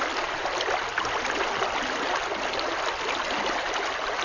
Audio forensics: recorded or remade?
recorded